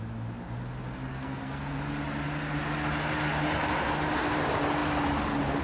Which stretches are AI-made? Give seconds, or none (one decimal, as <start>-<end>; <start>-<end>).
1.1-1.7

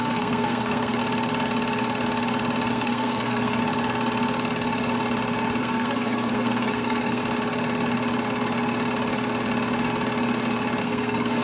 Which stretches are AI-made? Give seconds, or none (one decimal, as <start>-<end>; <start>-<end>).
0.0-1.0; 2.7-3.6; 5.6-7.2; 10.8-11.4